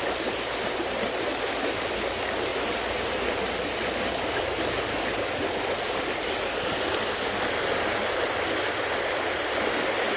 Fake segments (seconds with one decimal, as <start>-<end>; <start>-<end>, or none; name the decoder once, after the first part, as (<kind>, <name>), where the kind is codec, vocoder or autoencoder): none